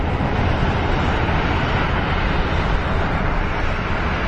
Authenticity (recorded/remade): recorded